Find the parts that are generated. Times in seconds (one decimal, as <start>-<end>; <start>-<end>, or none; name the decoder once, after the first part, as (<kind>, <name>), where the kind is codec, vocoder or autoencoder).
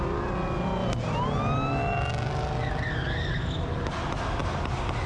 none